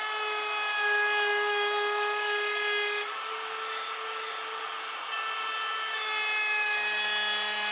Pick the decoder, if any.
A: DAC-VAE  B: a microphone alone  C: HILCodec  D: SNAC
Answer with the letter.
B